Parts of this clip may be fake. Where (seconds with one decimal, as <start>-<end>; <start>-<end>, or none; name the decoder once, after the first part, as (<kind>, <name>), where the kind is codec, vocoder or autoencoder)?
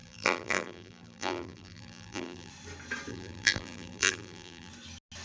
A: 0.0-2.5 (vocoder, BigVGAN v2); 3.1-4.7